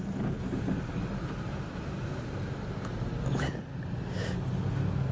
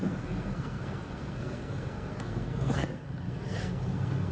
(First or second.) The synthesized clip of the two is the second